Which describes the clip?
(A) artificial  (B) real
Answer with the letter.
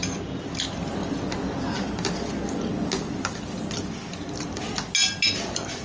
B